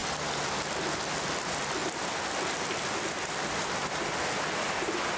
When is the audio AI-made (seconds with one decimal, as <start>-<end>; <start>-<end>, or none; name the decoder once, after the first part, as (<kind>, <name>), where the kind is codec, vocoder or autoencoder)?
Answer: none